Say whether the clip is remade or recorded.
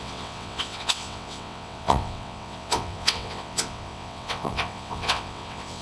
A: remade